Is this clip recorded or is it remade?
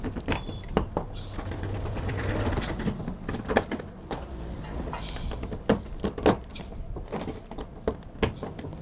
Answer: recorded